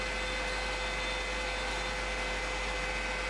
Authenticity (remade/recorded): recorded